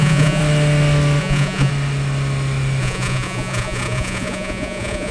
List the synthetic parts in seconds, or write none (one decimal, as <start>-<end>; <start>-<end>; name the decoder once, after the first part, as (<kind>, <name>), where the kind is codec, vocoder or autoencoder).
0.0-0.4 (vocoder, Vocos); 1.2-1.7; 2.8-5.1